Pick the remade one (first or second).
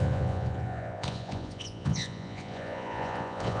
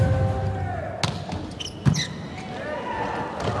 first